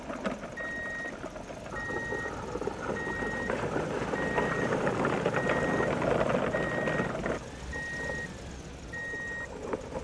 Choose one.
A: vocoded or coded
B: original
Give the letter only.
B